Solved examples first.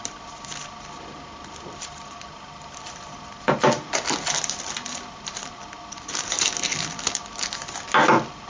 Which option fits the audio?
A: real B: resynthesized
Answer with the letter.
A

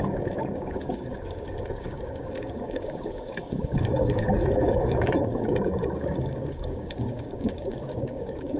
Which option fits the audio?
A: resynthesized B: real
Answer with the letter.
A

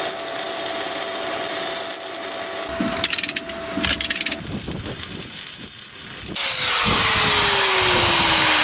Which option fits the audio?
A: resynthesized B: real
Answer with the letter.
B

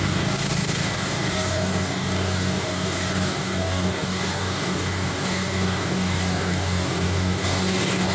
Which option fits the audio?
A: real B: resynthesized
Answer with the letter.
B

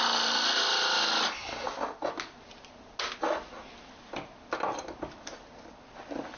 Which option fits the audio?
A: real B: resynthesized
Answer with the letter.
A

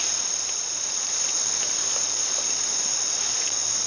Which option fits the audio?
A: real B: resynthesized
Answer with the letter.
A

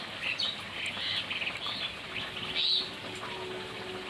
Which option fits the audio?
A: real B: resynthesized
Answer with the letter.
A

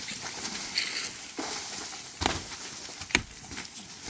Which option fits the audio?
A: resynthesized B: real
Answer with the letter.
B